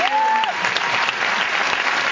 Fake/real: real